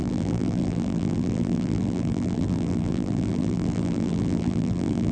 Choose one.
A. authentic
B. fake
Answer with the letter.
B